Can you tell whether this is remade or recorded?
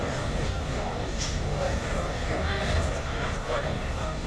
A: remade